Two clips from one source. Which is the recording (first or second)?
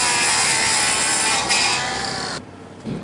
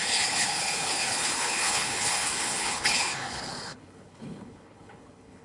first